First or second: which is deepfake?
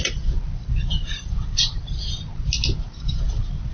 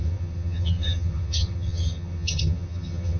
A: second